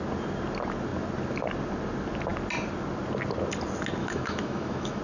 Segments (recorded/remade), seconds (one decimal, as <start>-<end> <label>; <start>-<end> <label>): 0.0-4.0 recorded; 4.0-5.0 remade